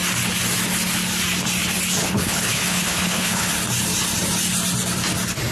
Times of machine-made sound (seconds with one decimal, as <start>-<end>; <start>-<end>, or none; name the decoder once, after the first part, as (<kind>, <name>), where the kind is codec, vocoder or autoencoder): 2.0-3.5 (codec, HILCodec)